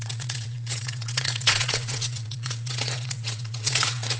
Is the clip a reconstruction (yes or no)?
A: yes